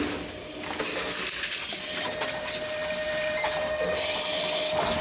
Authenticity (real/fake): real